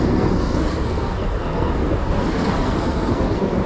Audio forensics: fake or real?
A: fake